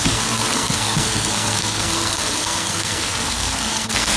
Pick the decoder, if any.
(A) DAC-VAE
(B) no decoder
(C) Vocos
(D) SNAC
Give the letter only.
D